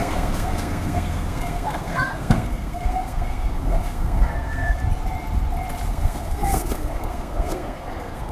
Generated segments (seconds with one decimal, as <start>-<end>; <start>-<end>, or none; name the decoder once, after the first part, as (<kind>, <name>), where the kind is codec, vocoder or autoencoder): 0.0-4.8 (codec, SNAC); 5.9-8.3